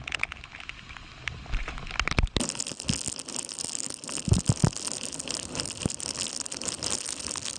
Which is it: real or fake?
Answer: real